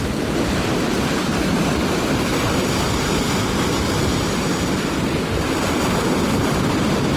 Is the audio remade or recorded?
recorded